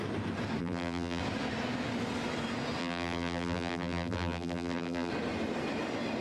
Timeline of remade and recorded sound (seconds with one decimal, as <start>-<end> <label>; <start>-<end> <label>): 0.0-0.6 recorded; 0.6-1.2 remade; 1.2-2.8 recorded; 2.8-5.1 remade; 5.1-6.2 recorded